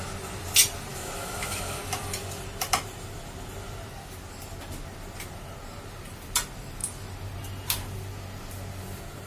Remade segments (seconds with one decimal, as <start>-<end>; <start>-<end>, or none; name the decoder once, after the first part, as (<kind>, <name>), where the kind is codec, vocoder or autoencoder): 0.9-1.8 (autoencoder, DAC-VAE)